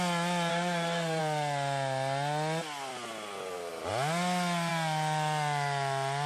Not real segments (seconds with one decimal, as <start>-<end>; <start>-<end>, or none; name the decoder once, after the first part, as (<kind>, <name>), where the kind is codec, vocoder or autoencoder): 0.5-1.2 (codec, SNAC)